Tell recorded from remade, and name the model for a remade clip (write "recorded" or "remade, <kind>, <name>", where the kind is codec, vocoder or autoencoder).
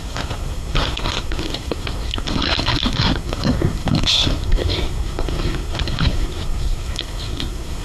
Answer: remade, codec, SNAC